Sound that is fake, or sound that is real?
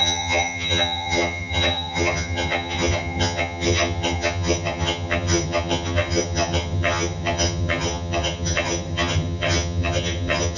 fake